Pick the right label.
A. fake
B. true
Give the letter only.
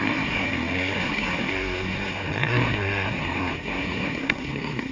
A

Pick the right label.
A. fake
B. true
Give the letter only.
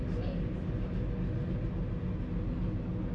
B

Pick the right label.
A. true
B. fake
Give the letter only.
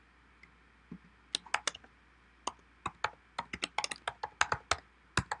A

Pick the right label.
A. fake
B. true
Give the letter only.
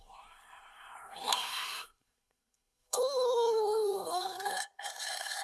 A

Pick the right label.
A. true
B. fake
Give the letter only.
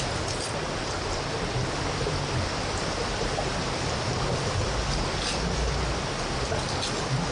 A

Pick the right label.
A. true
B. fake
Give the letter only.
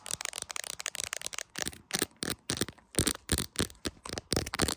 A